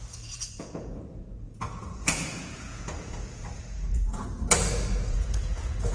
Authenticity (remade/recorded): remade